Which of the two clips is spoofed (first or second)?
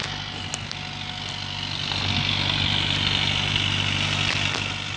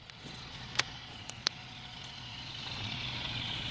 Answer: second